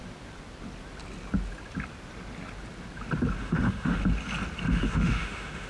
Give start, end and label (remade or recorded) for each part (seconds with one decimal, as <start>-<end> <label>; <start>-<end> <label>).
0.0-3.4 recorded; 3.4-4.0 remade; 4.0-4.7 recorded; 4.7-5.7 remade